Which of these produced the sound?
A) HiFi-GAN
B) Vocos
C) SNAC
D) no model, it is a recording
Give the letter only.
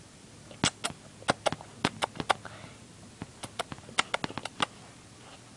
D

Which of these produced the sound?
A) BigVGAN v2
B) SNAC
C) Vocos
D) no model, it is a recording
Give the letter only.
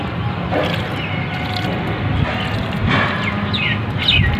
D